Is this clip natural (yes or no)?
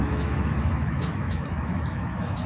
no